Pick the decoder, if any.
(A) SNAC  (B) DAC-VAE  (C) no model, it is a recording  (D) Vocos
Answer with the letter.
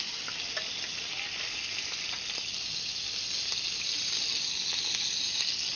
C